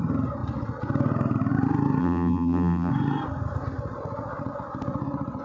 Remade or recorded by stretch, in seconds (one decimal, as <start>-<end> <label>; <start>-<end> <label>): 0.0-2.0 recorded; 2.0-2.9 remade; 2.9-5.4 recorded